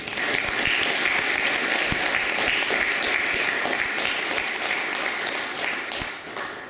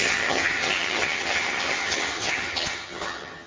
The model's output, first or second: second